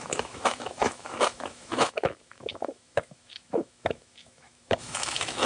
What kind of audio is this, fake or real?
fake